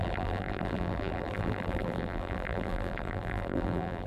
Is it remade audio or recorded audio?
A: remade